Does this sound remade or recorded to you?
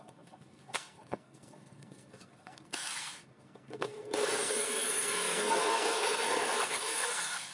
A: remade